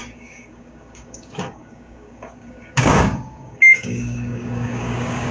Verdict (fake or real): fake